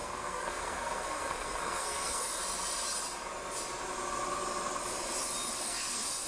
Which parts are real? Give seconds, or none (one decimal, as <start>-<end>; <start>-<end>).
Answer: 2.4-5.6